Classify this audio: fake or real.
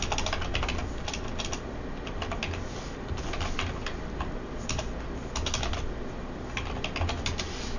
real